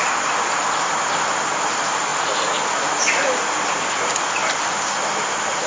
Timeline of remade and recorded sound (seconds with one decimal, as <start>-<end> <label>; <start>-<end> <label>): 0.0-5.7 recorded